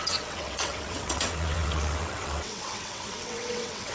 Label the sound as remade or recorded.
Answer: remade